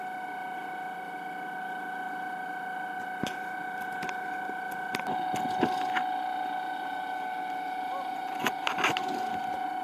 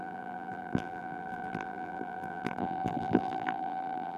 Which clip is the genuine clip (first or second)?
first